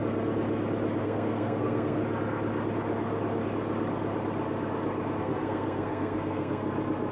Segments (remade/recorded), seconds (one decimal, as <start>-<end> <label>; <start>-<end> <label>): 0.0-1.0 recorded; 1.0-2.0 remade; 2.0-5.2 recorded; 5.2-6.6 remade; 6.6-7.1 recorded